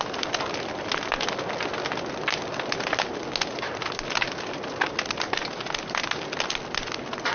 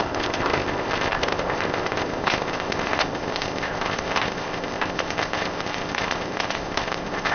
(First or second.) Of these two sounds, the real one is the first